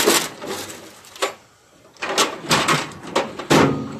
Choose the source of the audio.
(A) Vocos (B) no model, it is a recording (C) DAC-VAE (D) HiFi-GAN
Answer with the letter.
B